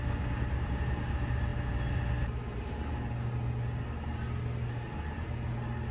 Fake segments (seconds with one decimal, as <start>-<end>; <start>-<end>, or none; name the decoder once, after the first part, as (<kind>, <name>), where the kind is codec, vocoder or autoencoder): none